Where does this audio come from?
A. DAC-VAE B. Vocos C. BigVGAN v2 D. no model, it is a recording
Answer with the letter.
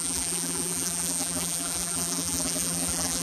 C